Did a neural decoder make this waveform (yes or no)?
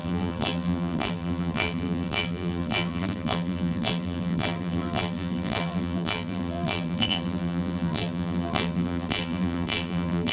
yes